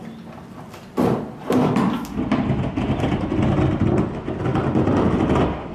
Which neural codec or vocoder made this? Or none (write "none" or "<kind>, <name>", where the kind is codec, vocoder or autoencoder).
none